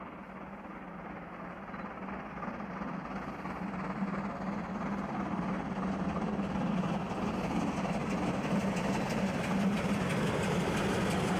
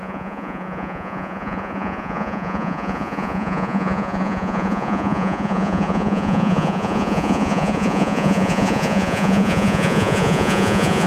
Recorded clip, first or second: first